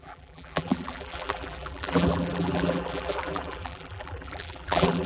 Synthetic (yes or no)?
yes